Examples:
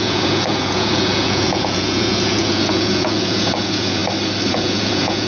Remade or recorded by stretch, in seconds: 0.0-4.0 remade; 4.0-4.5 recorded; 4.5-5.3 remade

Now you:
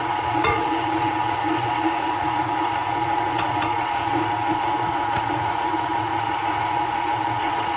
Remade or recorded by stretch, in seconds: 0.0-7.8 remade

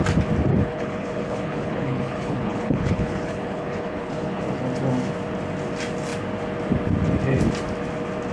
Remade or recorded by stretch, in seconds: 0.0-0.5 recorded; 0.5-4.4 remade; 4.4-8.3 recorded